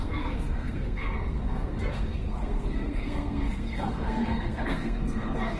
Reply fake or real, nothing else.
fake